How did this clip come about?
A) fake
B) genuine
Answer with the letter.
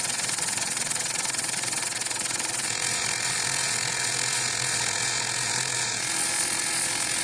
A